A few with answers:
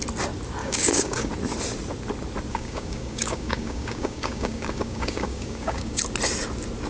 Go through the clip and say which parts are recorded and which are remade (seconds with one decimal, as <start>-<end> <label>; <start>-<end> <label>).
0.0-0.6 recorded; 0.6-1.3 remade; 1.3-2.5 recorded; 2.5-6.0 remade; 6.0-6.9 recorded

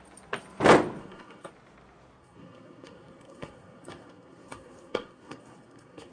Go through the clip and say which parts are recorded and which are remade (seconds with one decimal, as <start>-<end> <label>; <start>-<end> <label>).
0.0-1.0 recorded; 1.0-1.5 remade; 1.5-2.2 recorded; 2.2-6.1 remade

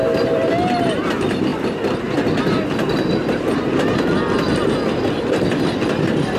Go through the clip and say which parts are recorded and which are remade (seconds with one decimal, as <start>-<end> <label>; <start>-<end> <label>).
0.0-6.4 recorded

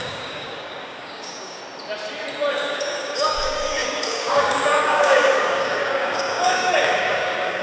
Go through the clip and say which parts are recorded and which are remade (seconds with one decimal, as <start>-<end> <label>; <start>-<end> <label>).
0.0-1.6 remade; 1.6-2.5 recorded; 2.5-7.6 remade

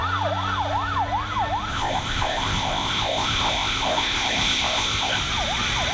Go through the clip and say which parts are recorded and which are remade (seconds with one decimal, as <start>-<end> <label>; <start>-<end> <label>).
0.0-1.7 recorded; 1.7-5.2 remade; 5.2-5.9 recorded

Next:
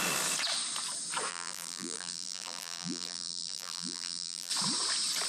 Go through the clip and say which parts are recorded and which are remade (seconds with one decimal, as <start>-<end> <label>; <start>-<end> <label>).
0.0-1.3 recorded; 1.3-4.5 remade; 4.5-5.3 recorded

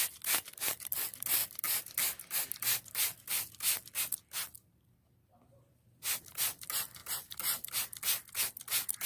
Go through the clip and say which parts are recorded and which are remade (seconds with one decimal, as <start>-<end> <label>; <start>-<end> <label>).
0.0-9.1 recorded